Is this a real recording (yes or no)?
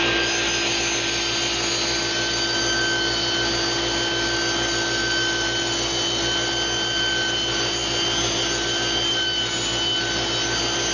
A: yes